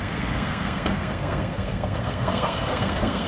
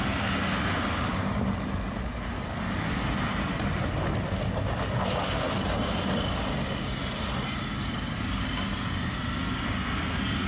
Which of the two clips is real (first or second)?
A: second